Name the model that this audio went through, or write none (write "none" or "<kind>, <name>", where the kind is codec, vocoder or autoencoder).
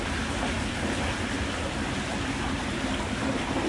none